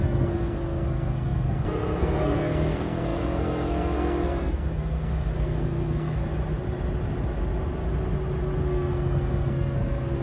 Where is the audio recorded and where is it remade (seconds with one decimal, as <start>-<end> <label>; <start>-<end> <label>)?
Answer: 0.0-6.2 remade; 6.2-8.6 recorded; 8.6-10.2 remade

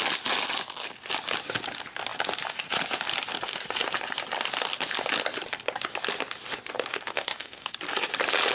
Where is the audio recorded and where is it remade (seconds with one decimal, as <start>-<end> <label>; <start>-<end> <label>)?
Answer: 0.0-6.9 recorded; 6.9-7.7 remade; 7.7-8.5 recorded

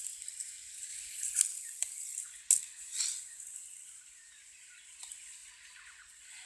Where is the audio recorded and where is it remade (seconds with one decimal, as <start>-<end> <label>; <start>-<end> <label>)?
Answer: 0.0-6.5 recorded

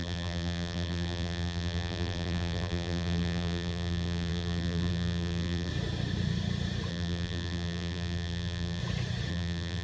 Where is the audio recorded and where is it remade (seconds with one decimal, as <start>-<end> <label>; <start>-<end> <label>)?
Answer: 0.0-5.7 remade; 5.7-6.9 recorded; 6.9-8.8 remade; 8.8-9.3 recorded; 9.3-9.8 remade

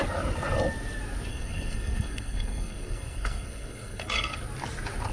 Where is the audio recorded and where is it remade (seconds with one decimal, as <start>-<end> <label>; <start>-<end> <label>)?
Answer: 0.0-1.3 recorded; 1.3-4.4 remade; 4.4-5.1 recorded